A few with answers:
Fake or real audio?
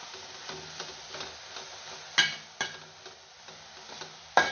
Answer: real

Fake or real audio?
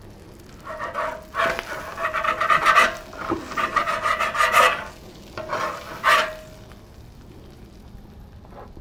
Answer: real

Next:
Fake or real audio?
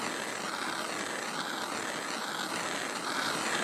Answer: real